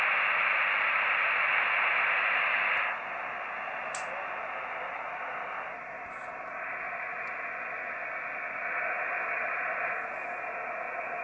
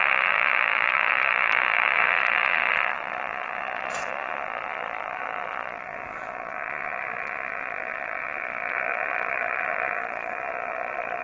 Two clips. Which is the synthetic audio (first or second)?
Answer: second